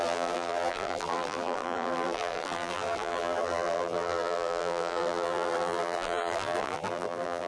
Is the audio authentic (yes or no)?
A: no